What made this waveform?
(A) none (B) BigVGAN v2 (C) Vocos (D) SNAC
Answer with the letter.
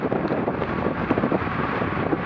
B